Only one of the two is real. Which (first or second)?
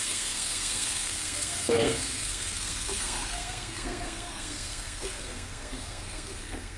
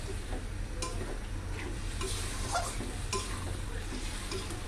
second